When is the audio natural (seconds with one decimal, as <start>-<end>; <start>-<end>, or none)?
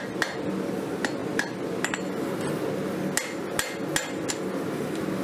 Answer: 0.0-5.2